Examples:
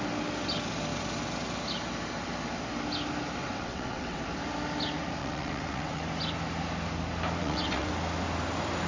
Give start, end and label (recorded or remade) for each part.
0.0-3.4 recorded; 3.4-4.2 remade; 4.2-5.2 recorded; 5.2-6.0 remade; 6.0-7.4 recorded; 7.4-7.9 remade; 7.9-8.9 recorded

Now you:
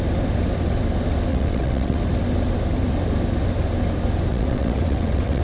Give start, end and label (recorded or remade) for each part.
0.0-1.3 recorded; 1.3-2.0 remade; 2.0-4.3 recorded; 4.3-5.4 remade